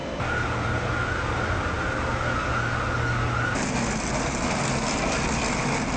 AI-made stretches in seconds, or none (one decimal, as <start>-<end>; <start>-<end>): none